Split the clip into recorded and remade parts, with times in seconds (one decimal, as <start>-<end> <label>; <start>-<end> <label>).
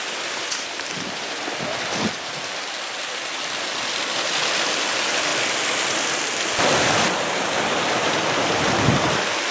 0.0-9.5 remade